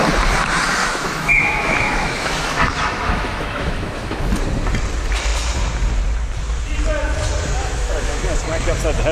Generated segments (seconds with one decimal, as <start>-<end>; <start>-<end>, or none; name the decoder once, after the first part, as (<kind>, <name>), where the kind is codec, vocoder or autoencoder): 0.8-4.2 (autoencoder, DAC-VAE); 7.6-8.4